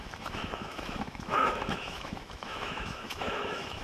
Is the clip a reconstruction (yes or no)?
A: yes